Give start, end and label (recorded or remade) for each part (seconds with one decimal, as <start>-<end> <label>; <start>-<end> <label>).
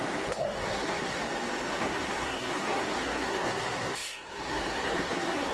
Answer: 0.0-1.2 remade; 1.2-1.8 recorded; 1.8-5.5 remade